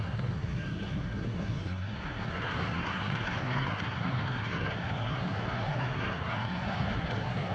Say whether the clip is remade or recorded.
remade